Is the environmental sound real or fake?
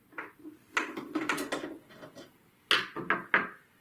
real